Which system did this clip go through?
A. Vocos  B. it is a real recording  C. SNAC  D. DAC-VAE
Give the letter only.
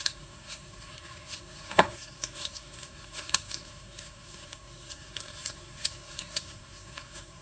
C